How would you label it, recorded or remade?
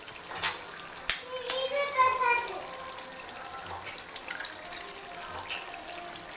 recorded